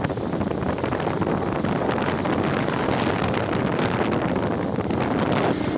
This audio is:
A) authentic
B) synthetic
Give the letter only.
A